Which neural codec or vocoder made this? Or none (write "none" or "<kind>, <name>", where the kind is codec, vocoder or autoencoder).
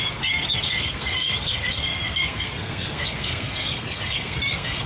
codec, SNAC